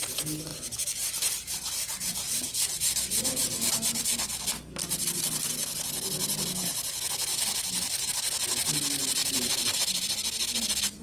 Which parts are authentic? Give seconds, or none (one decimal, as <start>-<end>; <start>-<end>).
0.0-0.5; 3.7-7.3; 8.1-9.2; 9.8-11.0